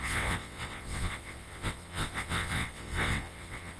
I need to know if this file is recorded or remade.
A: remade